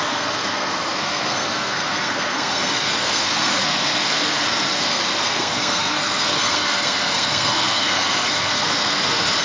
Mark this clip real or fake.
fake